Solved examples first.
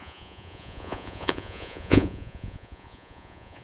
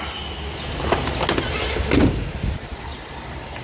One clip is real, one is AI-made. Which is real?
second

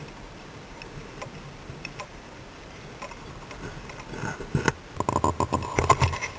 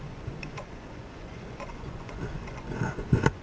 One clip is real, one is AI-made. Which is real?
first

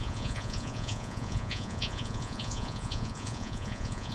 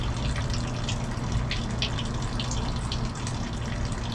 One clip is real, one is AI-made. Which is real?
second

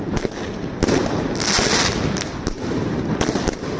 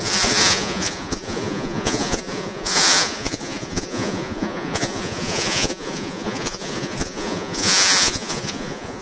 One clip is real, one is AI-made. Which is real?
first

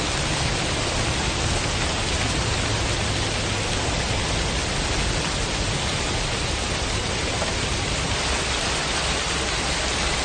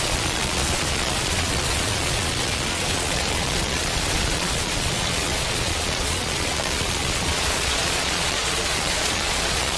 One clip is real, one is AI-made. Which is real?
first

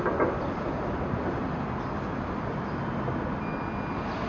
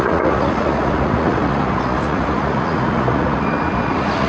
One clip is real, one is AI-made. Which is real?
first